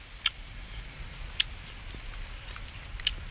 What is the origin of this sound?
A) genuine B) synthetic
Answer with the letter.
A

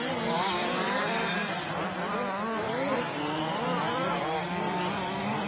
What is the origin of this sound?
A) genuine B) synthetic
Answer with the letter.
A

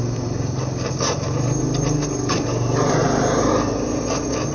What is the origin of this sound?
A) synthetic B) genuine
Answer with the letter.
B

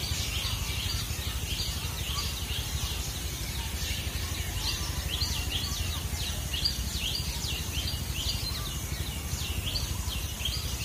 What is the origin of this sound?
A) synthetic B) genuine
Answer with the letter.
B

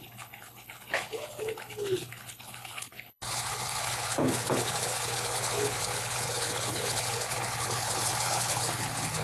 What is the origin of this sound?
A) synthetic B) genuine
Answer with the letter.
A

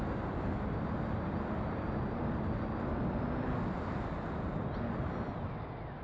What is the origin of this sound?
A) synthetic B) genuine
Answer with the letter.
B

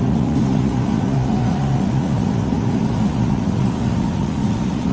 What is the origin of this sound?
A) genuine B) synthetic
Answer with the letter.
B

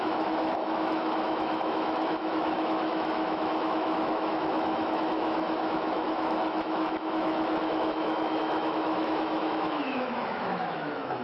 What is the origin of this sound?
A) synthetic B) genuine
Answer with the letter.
A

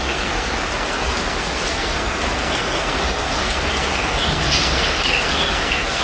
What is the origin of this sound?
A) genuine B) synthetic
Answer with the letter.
B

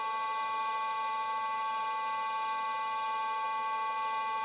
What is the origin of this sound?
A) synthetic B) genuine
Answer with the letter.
B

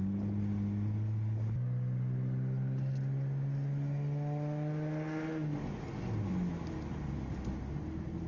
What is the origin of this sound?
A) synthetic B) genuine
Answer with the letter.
B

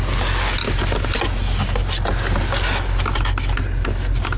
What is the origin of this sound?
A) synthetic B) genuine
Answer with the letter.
B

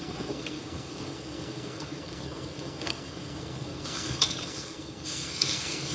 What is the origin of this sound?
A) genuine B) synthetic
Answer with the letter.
B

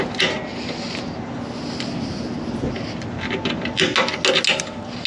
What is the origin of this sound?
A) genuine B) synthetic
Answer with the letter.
A